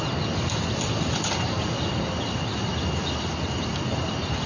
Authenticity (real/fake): real